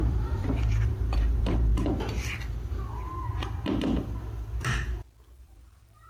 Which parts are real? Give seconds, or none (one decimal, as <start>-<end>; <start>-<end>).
1.7-5.4